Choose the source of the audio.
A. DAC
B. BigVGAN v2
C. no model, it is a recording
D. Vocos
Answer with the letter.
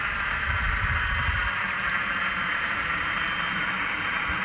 B